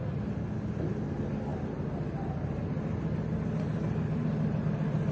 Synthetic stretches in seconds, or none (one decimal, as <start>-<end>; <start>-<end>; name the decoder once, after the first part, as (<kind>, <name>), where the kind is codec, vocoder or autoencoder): none